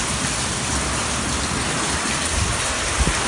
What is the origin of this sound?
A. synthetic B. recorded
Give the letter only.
B